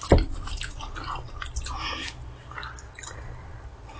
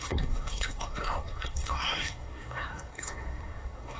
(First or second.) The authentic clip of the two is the first